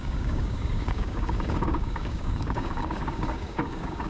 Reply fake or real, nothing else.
fake